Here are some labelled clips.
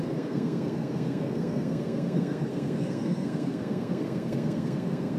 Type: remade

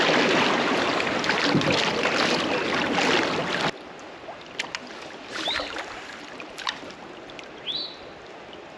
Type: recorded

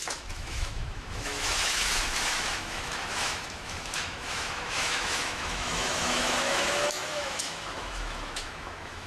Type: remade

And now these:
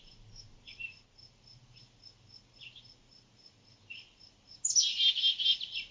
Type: recorded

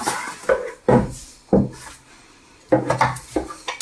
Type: recorded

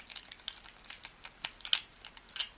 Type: recorded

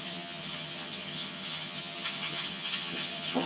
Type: remade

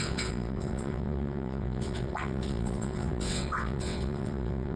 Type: remade